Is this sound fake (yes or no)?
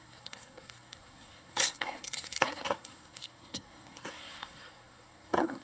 yes